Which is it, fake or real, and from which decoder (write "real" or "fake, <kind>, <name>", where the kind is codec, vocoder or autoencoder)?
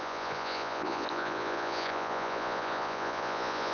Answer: fake, vocoder, Vocos